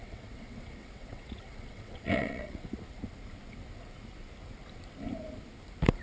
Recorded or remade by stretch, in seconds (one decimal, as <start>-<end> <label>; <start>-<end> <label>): 0.0-2.7 remade; 2.7-6.0 recorded